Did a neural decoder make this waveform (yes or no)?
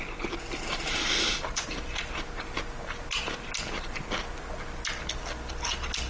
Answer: no